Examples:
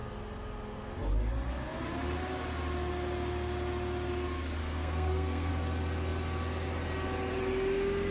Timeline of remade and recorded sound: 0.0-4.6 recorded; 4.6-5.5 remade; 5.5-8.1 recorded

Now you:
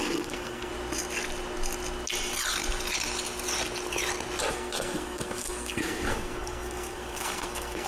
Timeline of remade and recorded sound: 0.0-0.7 remade; 0.7-4.5 recorded; 4.5-7.9 remade

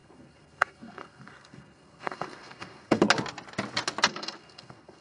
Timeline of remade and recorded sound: 0.0-3.0 remade; 3.0-4.1 recorded; 4.1-5.0 remade

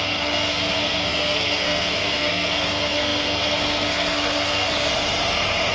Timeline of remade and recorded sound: 0.0-4.9 remade; 4.9-5.7 recorded

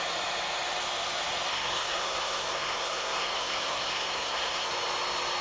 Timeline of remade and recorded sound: 0.0-1.5 recorded; 1.5-4.7 remade; 4.7-5.4 recorded

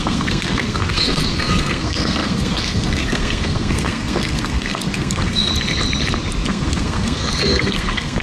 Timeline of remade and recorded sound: 0.0-5.5 remade; 5.5-6.5 recorded; 6.5-8.2 remade

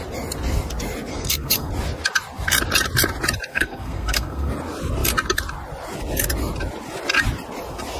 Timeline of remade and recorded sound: 0.0-1.1 recorded; 1.1-1.7 remade; 1.7-3.5 recorded; 3.5-4.5 remade; 4.5-8.0 recorded